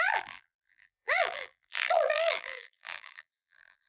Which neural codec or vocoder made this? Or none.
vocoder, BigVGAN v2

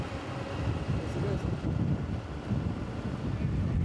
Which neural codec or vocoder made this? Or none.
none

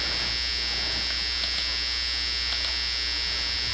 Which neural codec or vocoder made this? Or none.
none